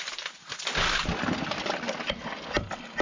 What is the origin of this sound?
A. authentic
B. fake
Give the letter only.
A